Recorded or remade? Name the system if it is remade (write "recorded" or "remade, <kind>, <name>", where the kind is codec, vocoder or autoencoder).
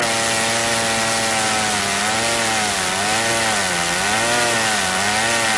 recorded